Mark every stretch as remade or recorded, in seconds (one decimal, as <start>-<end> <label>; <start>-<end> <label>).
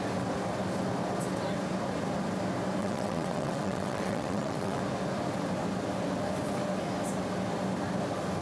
0.0-2.8 recorded; 2.8-4.8 remade; 4.8-8.4 recorded